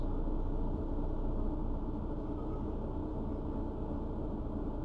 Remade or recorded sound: recorded